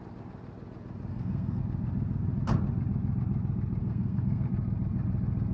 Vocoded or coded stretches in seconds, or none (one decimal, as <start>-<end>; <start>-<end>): 1.1-1.6; 3.8-4.5